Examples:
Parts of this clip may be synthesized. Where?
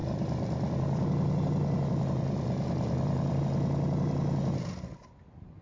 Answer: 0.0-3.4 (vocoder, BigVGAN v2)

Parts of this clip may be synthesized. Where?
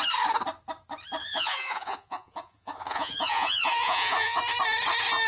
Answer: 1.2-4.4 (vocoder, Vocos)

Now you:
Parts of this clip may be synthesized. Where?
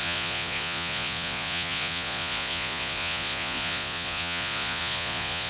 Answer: 0.0-5.5 (vocoder, Vocos)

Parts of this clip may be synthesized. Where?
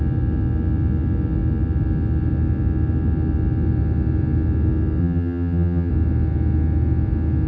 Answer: 5.0-5.9 (vocoder, HiFi-GAN)